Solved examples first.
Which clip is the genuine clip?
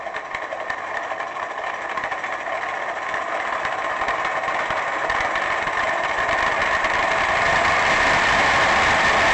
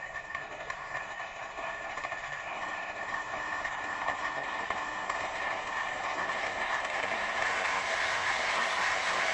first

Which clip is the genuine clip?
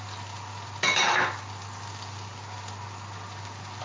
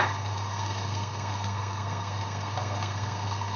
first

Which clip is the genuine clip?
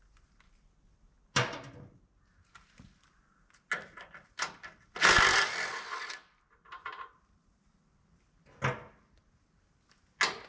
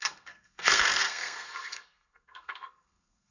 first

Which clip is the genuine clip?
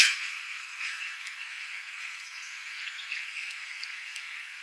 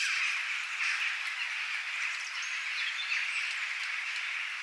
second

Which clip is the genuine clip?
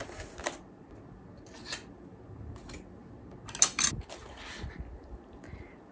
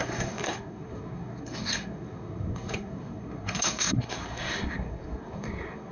first